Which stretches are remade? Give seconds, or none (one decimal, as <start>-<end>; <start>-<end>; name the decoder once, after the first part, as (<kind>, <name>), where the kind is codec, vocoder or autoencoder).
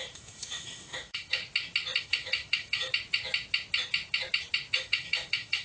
0.0-1.4 (autoencoder, DAC-VAE); 2.0-2.9; 4.8-5.6